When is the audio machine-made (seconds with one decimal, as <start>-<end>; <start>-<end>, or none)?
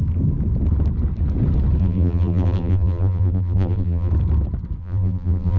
1.8-4.1; 4.8-5.6